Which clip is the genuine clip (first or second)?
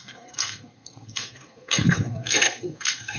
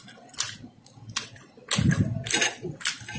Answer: second